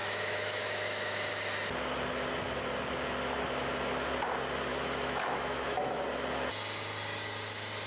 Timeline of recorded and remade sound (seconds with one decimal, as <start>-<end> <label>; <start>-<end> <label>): 0.0-1.3 remade; 1.3-4.7 recorded; 4.7-6.0 remade; 6.0-7.9 recorded